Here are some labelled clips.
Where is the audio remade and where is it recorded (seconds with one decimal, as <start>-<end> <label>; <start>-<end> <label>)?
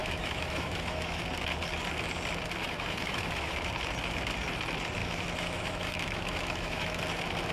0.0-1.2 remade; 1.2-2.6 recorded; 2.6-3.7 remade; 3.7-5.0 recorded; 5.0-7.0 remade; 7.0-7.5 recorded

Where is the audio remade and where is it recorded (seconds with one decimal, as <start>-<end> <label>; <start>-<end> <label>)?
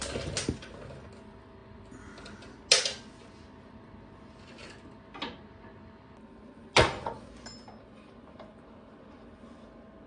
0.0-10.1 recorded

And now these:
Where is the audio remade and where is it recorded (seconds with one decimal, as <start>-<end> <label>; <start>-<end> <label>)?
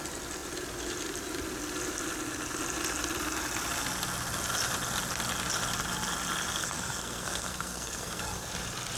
0.0-6.6 recorded; 6.6-8.5 remade; 8.5-9.0 recorded